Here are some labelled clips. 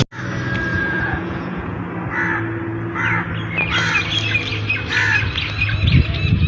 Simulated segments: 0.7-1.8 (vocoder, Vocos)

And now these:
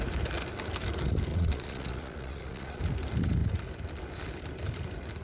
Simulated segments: 1.3-2.8 (vocoder, Vocos)

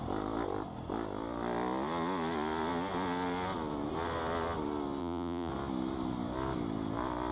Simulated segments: 5.0-5.5 (vocoder, Vocos)

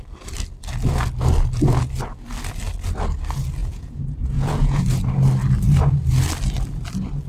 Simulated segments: 3.6-4.8 (vocoder, Vocos)

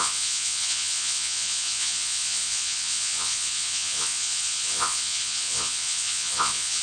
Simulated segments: 0.0-6.8 (vocoder, Vocos)